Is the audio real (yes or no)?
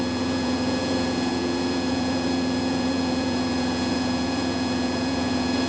no